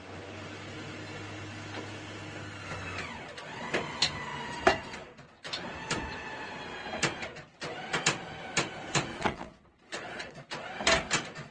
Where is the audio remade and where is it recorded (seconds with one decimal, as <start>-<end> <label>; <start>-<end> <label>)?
0.0-9.1 recorded; 9.1-10.5 remade; 10.5-11.5 recorded